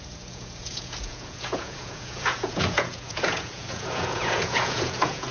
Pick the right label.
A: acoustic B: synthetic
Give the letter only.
B